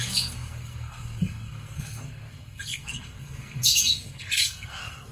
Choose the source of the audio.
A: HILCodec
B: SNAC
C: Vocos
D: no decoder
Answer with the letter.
B